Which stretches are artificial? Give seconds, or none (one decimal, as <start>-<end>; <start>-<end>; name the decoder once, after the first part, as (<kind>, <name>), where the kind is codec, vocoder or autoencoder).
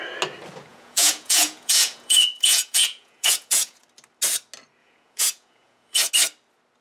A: 0.7-3.8 (vocoder, Vocos); 4.8-6.1